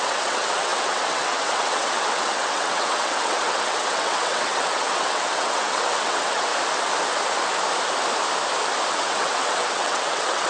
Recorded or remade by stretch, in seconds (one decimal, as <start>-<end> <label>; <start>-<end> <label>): 0.0-6.5 remade; 6.5-8.9 recorded; 8.9-10.5 remade

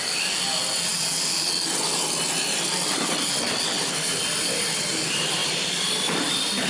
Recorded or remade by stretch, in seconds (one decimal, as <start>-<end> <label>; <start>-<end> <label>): 0.0-6.7 recorded

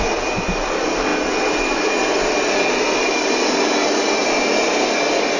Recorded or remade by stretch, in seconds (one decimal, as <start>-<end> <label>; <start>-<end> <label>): 0.0-5.4 recorded

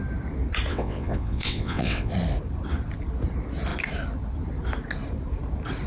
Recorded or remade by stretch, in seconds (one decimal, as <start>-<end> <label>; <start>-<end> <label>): 0.0-0.7 recorded; 0.7-2.1 remade; 2.1-5.9 recorded

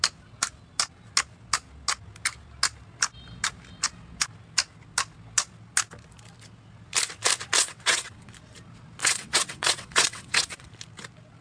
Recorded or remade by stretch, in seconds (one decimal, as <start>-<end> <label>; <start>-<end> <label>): 0.0-7.6 recorded; 7.6-8.3 remade; 8.3-9.0 recorded; 9.0-10.7 remade; 10.7-11.4 recorded